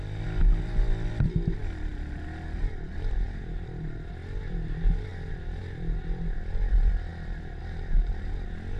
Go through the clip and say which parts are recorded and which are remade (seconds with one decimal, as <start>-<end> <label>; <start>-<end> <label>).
0.0-8.8 recorded